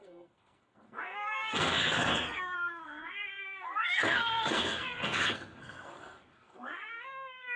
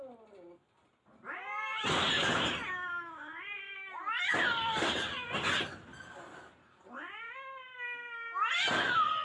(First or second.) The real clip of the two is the second